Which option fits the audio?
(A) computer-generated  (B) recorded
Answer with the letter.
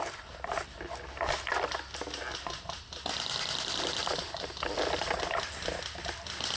B